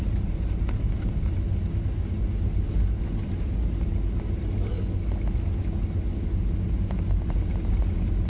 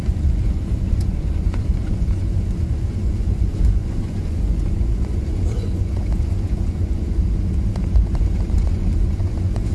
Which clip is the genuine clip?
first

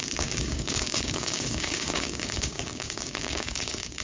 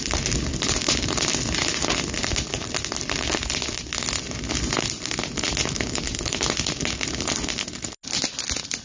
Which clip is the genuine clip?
second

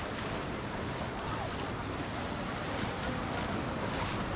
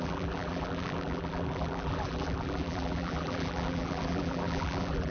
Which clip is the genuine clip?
first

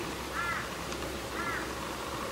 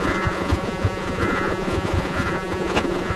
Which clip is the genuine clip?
first